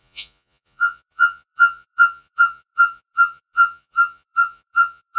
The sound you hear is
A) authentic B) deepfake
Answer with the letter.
B